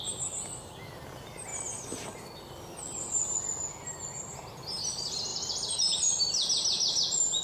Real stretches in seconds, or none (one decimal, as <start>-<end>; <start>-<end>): 0.0-5.3; 6.1-7.4